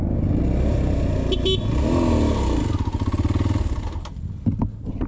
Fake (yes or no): no